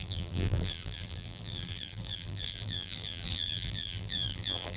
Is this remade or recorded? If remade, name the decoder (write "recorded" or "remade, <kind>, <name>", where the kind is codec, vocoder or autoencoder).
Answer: remade, vocoder, BigVGAN v2